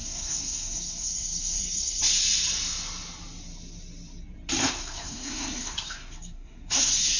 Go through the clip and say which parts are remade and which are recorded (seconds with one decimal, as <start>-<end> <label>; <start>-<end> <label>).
0.0-2.0 remade; 2.0-4.6 recorded; 4.6-7.2 remade